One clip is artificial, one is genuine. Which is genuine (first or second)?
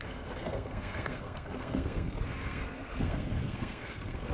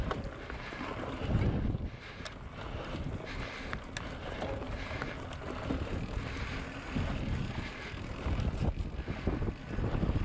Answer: second